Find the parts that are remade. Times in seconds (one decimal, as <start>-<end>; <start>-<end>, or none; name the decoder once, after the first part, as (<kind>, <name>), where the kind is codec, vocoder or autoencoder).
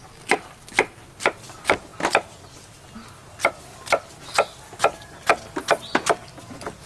none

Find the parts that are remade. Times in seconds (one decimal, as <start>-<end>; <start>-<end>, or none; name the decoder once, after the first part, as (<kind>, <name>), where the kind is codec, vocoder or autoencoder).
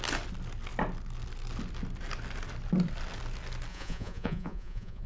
3.7-5.1 (vocoder, Vocos)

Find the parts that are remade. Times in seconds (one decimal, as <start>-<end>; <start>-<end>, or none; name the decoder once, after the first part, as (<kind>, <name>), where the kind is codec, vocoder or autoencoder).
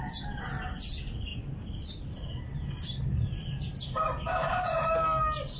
none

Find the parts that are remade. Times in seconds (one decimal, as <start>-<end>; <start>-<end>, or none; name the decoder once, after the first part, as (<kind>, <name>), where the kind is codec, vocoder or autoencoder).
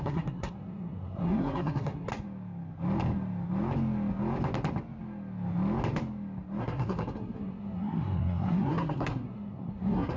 0.0-2.1 (codec, SNAC); 6.6-10.2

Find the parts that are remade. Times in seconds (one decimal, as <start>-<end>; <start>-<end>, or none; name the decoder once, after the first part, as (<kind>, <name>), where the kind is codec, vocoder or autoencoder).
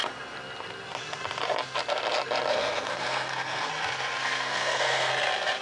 2.5-3.7 (codec, SNAC); 4.2-5.1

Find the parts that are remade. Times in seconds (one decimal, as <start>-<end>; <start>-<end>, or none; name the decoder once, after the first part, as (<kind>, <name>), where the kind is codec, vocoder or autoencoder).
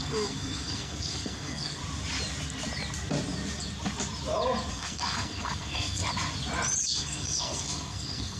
0.0-1.8 (codec, SNAC); 4.7-6.0; 6.8-8.4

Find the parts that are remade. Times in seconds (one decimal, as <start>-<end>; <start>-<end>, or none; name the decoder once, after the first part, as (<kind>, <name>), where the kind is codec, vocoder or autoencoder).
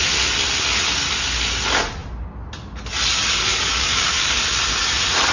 3.5-4.4 (codec, DAC)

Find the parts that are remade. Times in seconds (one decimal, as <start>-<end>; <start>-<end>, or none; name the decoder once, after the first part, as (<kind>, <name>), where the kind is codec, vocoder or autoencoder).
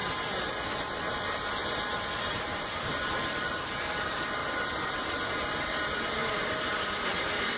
0.0-4.4 (vocoder, BigVGAN v2); 5.1-7.6